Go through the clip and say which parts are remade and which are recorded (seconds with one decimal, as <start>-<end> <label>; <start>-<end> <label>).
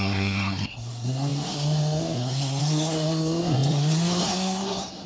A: 0.0-5.1 remade